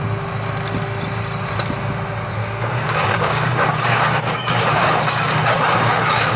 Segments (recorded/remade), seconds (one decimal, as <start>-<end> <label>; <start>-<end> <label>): 0.0-2.4 recorded; 2.4-6.4 remade